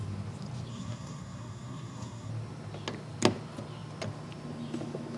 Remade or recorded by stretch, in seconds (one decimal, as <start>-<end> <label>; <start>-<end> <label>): 0.0-0.7 recorded; 0.7-2.3 remade; 2.3-5.2 recorded